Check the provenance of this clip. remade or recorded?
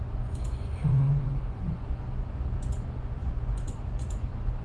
remade